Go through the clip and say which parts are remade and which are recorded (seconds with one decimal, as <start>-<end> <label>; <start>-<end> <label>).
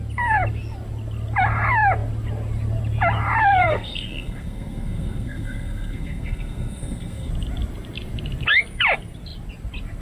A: 0.0-3.6 recorded; 3.6-7.3 remade; 7.3-10.0 recorded